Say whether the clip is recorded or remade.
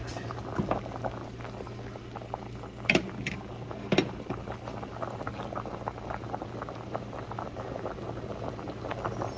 recorded